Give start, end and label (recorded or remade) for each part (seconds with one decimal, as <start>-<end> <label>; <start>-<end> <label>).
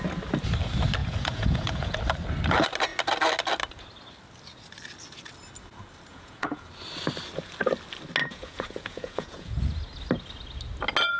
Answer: 0.0-1.0 recorded; 1.0-2.0 remade; 2.0-6.1 recorded; 6.1-6.7 remade; 6.7-8.2 recorded; 8.2-9.6 remade; 9.6-11.2 recorded